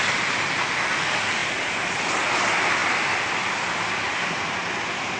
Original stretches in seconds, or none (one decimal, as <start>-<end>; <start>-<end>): 0.0-5.2